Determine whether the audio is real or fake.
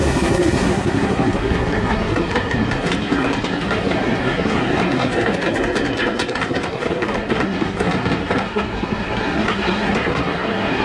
fake